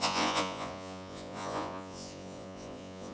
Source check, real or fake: fake